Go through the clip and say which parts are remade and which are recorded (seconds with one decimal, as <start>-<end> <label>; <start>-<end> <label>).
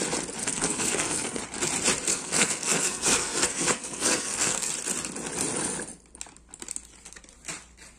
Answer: 0.0-0.4 recorded; 0.4-1.4 remade; 1.4-2.1 recorded; 2.1-4.7 remade; 4.7-8.0 recorded